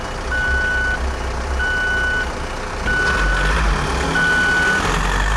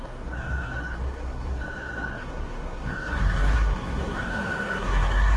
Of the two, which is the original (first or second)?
first